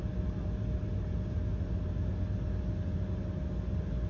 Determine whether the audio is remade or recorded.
recorded